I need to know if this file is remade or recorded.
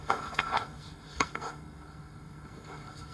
remade